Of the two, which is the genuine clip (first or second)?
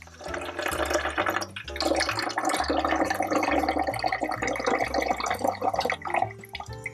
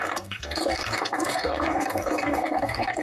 first